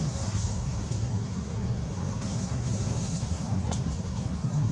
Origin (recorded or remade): remade